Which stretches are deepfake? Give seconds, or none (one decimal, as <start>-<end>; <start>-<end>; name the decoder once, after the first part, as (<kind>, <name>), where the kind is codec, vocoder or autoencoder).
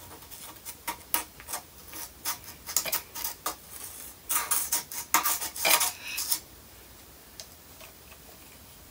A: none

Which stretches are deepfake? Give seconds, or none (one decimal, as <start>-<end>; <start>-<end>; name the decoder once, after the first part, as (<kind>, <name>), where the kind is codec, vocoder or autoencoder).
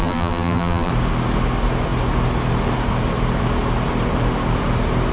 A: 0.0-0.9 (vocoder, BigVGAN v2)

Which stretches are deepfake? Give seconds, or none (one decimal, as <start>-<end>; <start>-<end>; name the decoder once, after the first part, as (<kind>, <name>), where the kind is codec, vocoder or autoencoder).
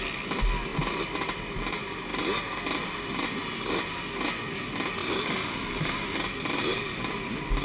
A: 5.0-7.0 (vocoder, BigVGAN v2)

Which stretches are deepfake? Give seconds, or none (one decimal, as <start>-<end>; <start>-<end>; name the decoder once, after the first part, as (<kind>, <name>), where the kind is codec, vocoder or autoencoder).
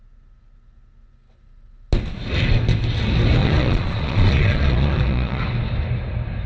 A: 3.4-5.4 (vocoder, Vocos)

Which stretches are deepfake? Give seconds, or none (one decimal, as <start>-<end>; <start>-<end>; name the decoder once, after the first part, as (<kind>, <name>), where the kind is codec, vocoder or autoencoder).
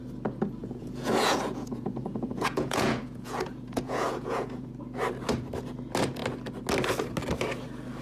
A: 0.6-4.7 (vocoder, Vocos)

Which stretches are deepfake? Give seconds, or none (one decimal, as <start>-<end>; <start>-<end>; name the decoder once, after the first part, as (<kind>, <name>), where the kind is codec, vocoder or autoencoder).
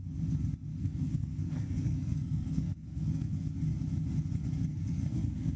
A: 0.7-3.5 (codec, SNAC); 4.7-5.6